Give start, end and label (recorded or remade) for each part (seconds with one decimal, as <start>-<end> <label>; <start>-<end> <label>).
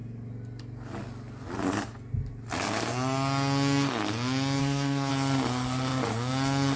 0.0-4.6 recorded; 4.6-5.1 remade; 5.1-6.8 recorded